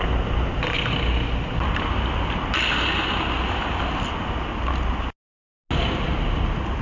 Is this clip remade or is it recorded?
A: recorded